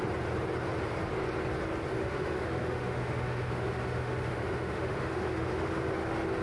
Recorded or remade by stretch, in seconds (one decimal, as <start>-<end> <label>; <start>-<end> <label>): 0.0-2.0 recorded; 2.0-5.8 remade; 5.8-6.4 recorded